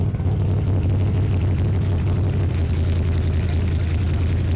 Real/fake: real